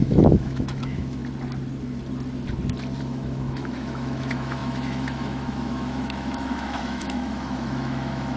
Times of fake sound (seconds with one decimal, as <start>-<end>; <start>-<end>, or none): 0.0-1.2; 3.0-8.4